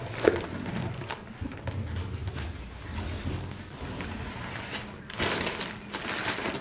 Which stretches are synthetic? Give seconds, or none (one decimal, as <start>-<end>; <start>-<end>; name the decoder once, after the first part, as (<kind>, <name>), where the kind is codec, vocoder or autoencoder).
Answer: none